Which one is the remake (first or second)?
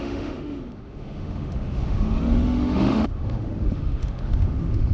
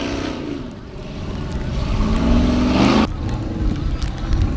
first